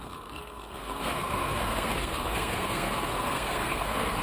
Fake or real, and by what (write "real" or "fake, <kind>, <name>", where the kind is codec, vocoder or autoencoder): fake, codec, SNAC